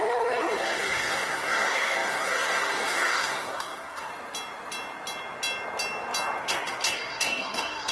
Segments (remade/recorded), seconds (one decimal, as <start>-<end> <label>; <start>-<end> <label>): 0.0-4.1 remade; 4.1-6.4 recorded; 6.4-7.9 remade